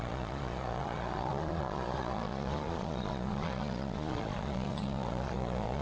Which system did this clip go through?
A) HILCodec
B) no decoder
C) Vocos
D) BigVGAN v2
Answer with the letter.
C